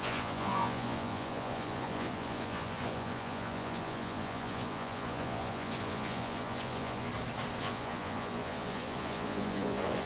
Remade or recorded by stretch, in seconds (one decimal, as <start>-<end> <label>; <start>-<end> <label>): 0.0-7.1 remade; 7.1-7.6 recorded; 7.6-10.1 remade